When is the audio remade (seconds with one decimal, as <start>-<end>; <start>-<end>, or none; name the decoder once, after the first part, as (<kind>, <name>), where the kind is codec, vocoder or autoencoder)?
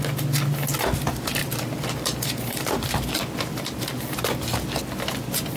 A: 1.4-4.8 (vocoder, BigVGAN v2)